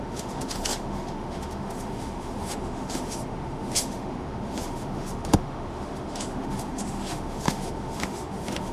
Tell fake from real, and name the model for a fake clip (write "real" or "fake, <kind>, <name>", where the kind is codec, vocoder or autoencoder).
fake, autoencoder, DAC-VAE